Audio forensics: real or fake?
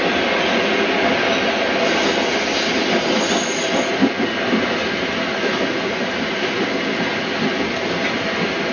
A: real